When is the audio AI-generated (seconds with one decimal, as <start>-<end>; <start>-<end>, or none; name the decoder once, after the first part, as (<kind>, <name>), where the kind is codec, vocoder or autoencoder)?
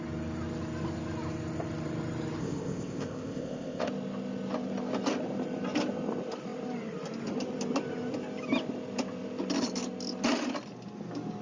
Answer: 2.4-3.9 (codec, ZipCodec)